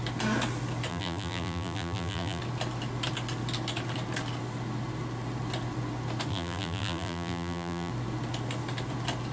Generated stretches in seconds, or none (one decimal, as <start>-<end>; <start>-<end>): 0.9-2.4; 6.3-7.9